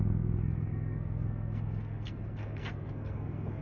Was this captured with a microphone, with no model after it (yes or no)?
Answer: no